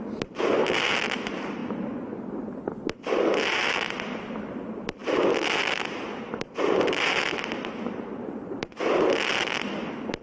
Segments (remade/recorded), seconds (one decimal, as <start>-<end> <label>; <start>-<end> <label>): 0.0-1.6 recorded; 1.6-2.2 remade; 2.2-10.2 recorded